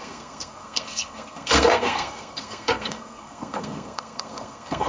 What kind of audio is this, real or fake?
fake